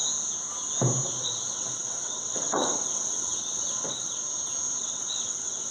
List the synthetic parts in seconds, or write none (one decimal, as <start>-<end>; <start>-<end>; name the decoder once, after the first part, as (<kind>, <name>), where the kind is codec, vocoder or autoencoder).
1.2-4.2 (vocoder, WaveNeXt); 4.8-5.7